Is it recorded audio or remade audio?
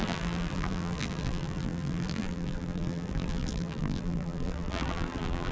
remade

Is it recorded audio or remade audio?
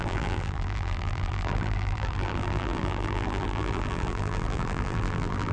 remade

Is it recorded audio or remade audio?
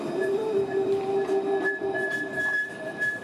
remade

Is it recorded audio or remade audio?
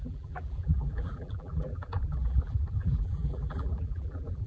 remade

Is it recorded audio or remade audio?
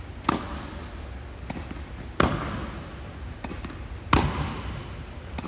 recorded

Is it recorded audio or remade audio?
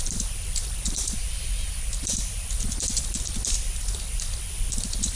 remade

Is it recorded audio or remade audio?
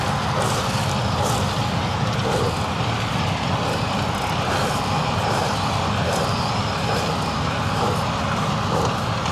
recorded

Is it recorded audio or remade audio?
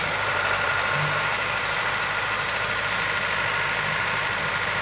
remade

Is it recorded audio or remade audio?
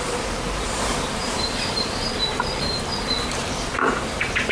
remade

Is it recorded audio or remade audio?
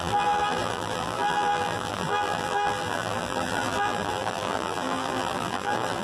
remade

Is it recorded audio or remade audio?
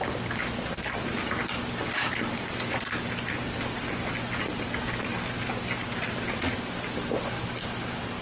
recorded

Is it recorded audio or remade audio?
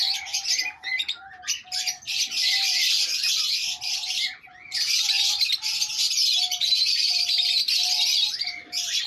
recorded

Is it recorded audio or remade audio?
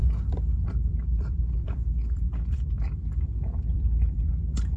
remade